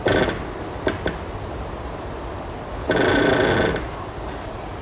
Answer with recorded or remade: recorded